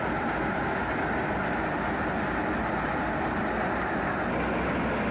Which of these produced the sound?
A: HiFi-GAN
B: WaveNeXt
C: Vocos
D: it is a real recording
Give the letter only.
D